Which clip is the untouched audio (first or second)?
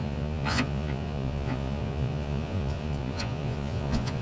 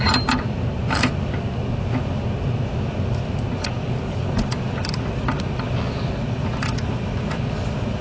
second